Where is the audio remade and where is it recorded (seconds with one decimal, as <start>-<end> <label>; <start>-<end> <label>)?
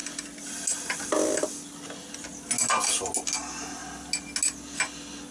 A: 0.0-5.3 recorded